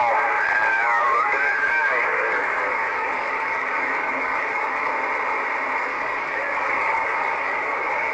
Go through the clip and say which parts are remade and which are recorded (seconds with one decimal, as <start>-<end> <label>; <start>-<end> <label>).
0.0-0.7 recorded; 0.7-4.9 remade; 4.9-5.9 recorded; 5.9-8.1 remade